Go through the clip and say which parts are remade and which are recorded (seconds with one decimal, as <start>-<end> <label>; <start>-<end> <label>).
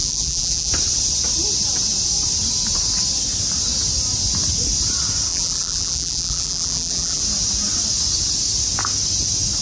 0.0-0.7 remade; 0.7-5.3 recorded; 5.3-7.2 remade; 7.2-9.6 recorded